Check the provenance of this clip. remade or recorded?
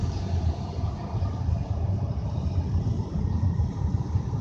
remade